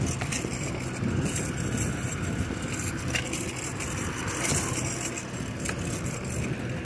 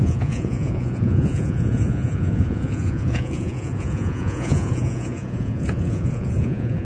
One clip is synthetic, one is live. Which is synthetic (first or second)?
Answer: second